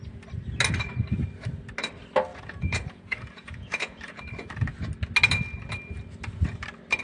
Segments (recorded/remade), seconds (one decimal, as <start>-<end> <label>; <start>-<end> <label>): 0.0-2.3 recorded; 2.3-4.2 remade; 4.2-7.0 recorded